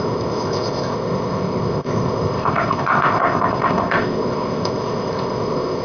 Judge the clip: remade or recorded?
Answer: remade